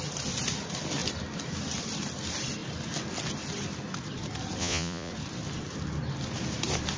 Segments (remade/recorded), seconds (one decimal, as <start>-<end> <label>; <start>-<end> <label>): 0.0-4.6 recorded; 4.6-5.1 remade; 5.1-7.0 recorded